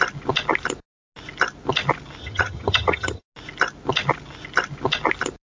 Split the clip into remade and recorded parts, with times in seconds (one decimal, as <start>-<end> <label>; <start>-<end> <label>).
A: 0.0-2.2 recorded; 2.2-3.2 remade; 3.2-5.5 recorded